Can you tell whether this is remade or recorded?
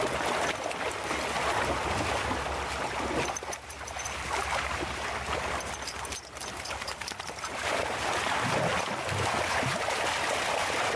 recorded